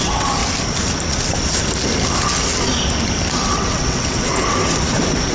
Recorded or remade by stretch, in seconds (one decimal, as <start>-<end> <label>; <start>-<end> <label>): 0.0-0.4 remade; 0.4-3.5 recorded; 3.5-4.6 remade; 4.6-5.3 recorded